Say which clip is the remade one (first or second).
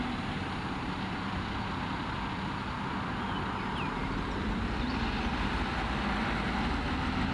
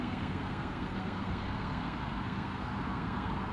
second